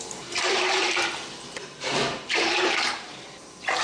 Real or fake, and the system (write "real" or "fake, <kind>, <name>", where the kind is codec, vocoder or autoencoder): fake, vocoder, BigVGAN v2